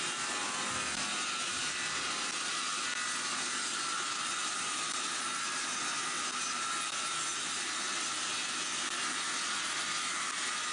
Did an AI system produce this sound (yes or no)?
no